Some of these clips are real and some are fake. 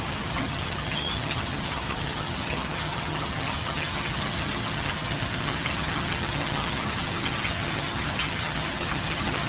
fake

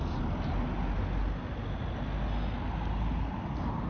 real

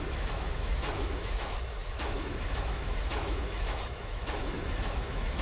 fake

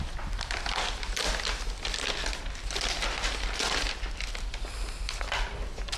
real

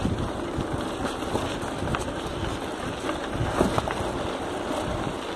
real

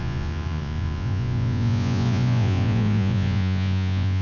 fake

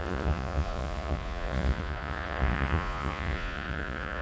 fake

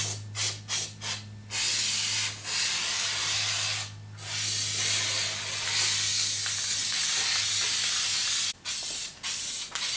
real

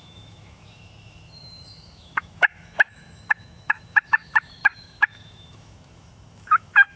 fake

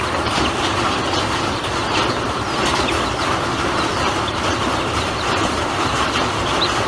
real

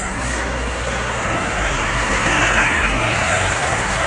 fake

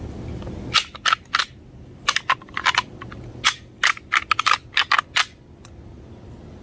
real